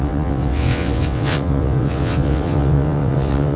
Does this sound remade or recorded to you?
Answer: remade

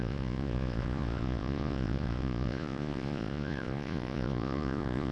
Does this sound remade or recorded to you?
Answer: remade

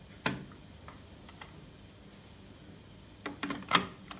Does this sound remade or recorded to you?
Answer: recorded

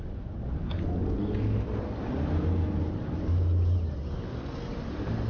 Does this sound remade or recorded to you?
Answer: recorded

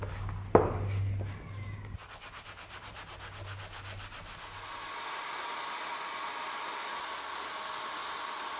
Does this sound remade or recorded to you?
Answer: recorded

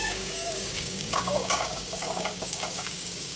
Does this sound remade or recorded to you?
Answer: remade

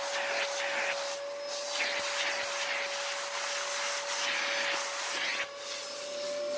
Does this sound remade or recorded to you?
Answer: recorded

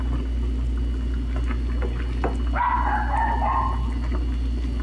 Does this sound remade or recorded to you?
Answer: recorded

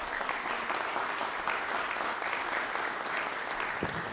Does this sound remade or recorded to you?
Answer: recorded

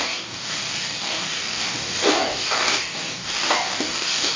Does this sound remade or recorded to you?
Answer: remade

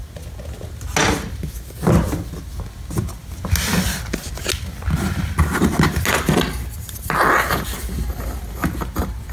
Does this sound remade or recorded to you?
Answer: recorded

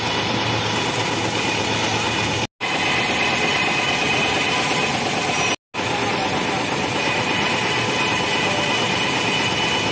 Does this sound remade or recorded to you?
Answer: recorded